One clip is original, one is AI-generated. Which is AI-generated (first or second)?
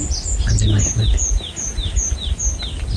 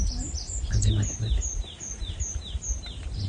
second